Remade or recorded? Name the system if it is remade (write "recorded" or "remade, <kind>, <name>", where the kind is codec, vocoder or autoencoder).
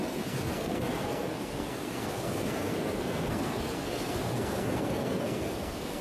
remade, codec, SNAC